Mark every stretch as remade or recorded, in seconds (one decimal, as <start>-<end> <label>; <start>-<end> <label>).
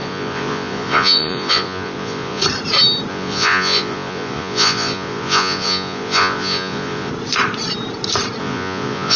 0.0-2.4 remade; 2.4-3.1 recorded; 3.1-7.1 remade; 7.1-8.4 recorded; 8.4-9.2 remade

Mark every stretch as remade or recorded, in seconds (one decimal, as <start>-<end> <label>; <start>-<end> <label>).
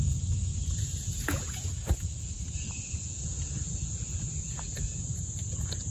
0.0-5.9 remade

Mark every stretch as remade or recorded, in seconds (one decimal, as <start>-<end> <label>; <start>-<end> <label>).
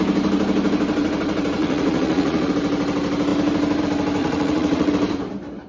0.0-1.6 recorded; 1.6-2.5 remade; 2.5-4.2 recorded; 4.2-4.9 remade; 4.9-5.7 recorded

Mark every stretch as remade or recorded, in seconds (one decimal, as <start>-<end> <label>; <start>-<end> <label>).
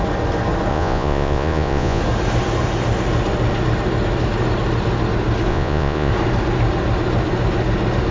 0.0-0.7 recorded; 0.7-2.0 remade; 2.0-5.5 recorded; 5.5-6.1 remade; 6.1-8.1 recorded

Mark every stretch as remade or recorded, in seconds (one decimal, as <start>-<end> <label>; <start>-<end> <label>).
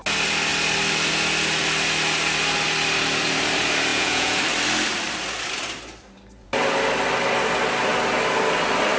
0.0-3.9 recorded; 3.9-4.4 remade; 4.4-9.0 recorded